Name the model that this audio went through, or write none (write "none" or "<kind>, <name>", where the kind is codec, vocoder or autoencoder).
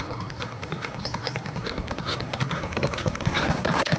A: codec, SNAC